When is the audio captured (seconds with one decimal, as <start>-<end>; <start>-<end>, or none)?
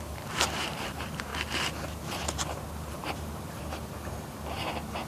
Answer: none